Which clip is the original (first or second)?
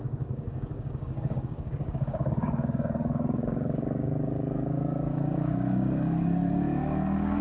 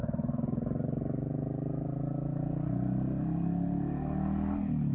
second